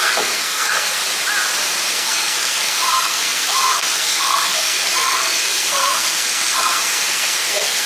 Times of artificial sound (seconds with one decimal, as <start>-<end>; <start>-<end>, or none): 0.0-1.0; 1.9-7.9